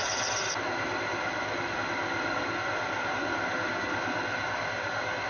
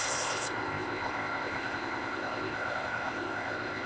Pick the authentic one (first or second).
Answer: first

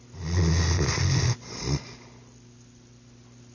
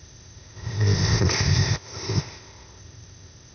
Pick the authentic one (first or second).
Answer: first